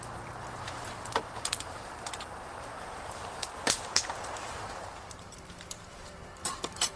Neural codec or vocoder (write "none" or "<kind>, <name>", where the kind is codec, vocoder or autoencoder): vocoder, BigVGAN v2